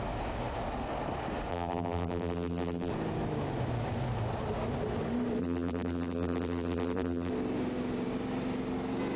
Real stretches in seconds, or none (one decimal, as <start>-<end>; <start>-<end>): 0.0-1.5; 2.9-5.4; 7.3-9.2